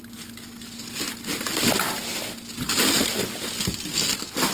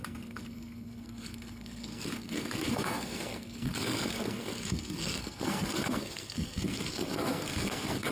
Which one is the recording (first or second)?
first